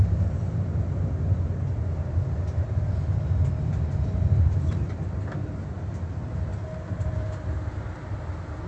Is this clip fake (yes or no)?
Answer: no